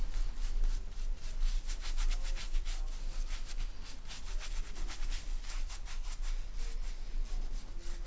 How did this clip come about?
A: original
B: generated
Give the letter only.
A